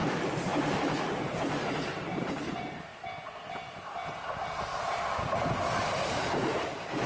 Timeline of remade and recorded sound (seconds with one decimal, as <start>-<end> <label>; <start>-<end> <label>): 0.0-2.9 remade; 2.9-6.1 recorded; 6.1-7.1 remade